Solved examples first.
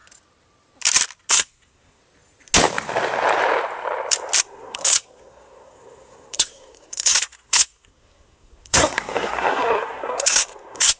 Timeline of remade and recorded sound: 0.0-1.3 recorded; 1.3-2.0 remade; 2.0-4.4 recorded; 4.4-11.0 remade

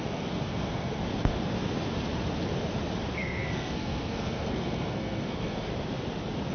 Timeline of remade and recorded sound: 0.0-1.0 remade; 1.0-3.1 recorded; 3.1-5.7 remade; 5.7-6.5 recorded

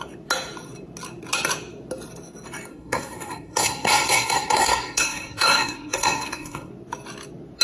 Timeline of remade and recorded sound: 0.0-2.7 recorded; 2.7-6.7 remade; 6.7-7.6 recorded

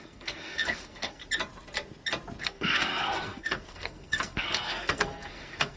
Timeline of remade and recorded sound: 0.0-1.2 remade; 1.2-2.4 recorded; 2.4-5.8 remade

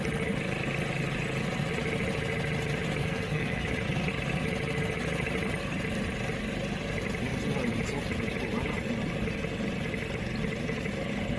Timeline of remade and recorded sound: 0.0-3.0 recorded; 3.0-3.7 remade; 3.7-11.4 recorded

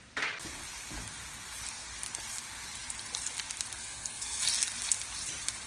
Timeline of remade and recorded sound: 0.0-3.8 recorded; 3.8-4.4 remade; 4.4-5.7 recorded

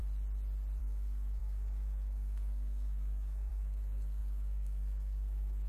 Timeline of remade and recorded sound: 0.0-0.8 recorded; 0.8-5.7 remade

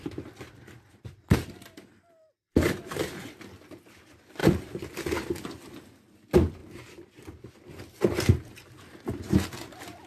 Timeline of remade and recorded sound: 0.0-10.1 recorded